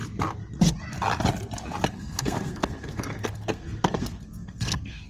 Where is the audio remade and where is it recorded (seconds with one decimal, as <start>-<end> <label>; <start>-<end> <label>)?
0.0-1.9 recorded; 1.9-5.1 remade